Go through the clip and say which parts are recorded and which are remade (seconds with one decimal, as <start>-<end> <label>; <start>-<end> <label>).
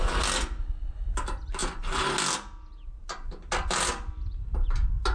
0.0-5.1 recorded